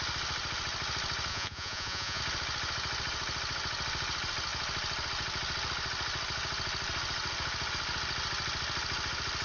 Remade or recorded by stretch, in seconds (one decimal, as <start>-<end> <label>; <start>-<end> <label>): 0.0-1.3 recorded; 1.3-2.2 remade; 2.2-9.4 recorded